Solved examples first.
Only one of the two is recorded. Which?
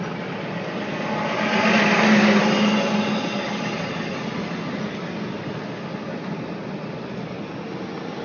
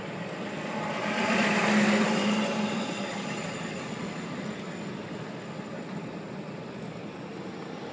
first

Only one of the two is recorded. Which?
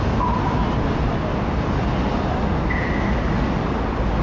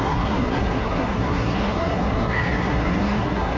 first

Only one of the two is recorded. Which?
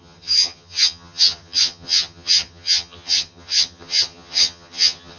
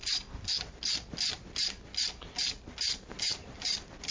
second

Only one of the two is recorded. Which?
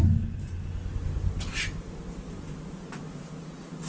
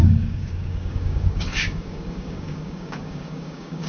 first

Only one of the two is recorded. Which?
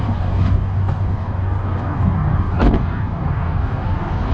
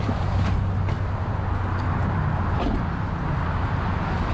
second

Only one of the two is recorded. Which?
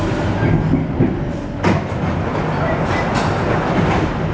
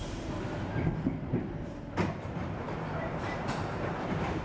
first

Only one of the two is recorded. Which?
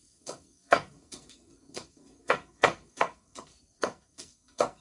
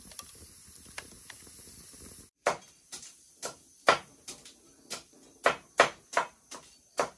second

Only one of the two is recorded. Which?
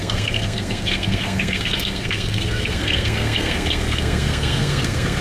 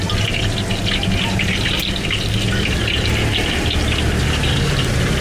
second